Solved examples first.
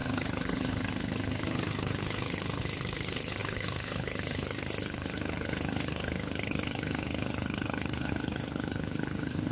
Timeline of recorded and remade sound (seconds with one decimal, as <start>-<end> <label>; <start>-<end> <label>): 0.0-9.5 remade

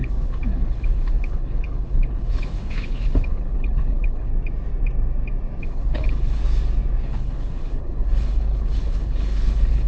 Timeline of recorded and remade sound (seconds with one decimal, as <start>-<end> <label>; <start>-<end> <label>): 0.0-4.3 remade; 4.3-5.6 recorded; 5.6-6.4 remade; 6.4-7.0 recorded; 7.0-9.9 remade

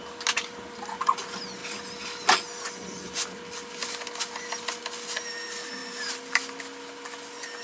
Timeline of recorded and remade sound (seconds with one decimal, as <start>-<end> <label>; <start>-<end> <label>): 0.0-7.6 recorded

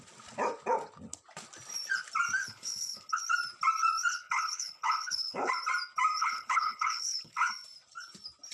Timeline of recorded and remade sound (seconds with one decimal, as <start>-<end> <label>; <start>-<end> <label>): 0.0-2.4 recorded; 2.4-3.2 remade; 3.2-4.1 recorded; 4.1-5.5 remade; 5.5-6.2 recorded; 6.2-7.5 remade; 7.5-8.5 recorded

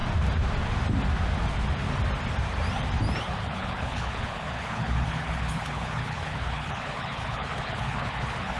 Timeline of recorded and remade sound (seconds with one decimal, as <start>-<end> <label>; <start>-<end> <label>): 0.0-3.2 recorded; 3.2-8.6 remade